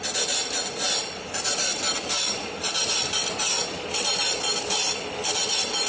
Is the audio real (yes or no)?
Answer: no